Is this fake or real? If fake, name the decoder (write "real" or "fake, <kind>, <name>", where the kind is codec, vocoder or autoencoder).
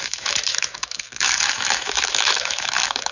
fake, autoencoder, DAC-VAE